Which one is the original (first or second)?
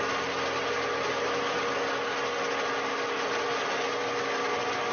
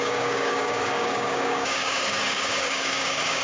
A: first